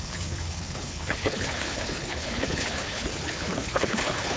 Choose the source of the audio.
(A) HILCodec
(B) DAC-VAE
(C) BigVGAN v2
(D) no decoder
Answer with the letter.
A